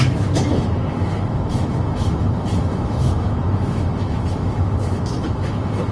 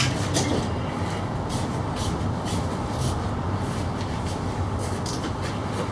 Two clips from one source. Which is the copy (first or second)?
first